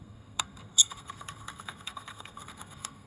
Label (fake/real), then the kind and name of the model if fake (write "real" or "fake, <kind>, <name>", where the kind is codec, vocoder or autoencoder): fake, codec, SNAC